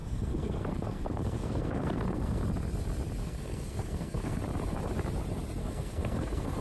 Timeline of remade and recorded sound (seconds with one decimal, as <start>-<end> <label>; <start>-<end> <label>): 0.0-2.4 remade; 2.4-3.2 recorded; 3.2-4.4 remade; 4.4-5.6 recorded; 5.6-6.6 remade